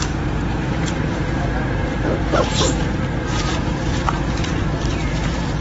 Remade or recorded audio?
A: remade